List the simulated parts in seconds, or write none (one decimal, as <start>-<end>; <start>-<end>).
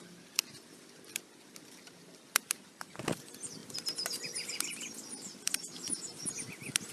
none